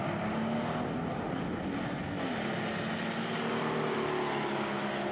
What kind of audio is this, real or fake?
real